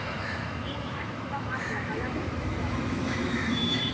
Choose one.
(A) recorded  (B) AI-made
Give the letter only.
B